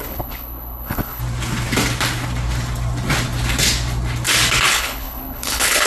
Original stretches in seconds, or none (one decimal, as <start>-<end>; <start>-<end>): 1.2-4.7